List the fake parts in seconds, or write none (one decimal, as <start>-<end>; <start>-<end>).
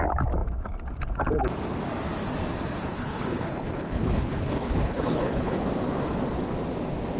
2.8-5.6